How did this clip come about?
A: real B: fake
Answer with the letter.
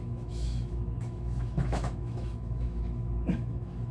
B